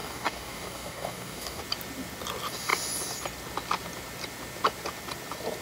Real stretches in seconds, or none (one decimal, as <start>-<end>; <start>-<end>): 1.6-5.6